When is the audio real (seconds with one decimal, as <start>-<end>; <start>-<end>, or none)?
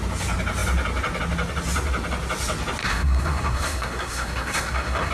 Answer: 0.0-2.8